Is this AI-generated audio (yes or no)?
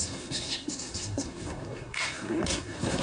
yes